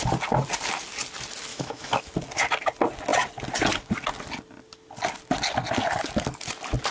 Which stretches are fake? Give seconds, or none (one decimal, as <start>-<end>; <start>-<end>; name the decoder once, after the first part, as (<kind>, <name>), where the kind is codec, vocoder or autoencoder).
1.5-2.1 (autoencoder, DAC-VAE)